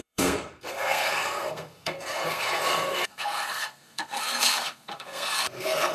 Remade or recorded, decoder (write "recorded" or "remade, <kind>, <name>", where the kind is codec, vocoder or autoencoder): remade, codec, SNAC